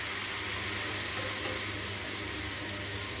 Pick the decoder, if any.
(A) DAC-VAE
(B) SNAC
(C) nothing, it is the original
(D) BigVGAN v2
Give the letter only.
C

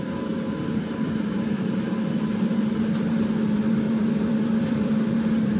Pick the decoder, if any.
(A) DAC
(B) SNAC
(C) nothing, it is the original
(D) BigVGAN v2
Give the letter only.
D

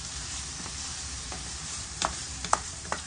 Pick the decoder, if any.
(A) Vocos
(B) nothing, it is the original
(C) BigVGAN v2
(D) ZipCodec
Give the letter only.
C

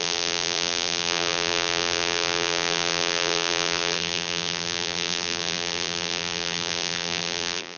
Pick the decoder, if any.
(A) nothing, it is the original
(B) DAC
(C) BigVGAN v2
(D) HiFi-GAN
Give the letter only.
C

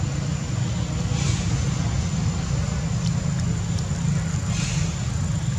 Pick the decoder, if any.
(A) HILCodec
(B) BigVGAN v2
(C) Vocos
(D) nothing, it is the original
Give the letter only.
D